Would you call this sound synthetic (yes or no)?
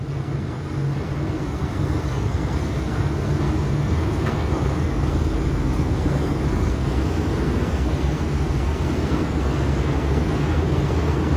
yes